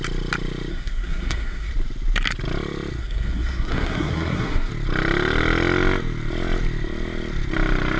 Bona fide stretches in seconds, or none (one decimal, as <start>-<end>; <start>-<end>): 0.0-0.7; 1.7-3.0; 4.7-8.0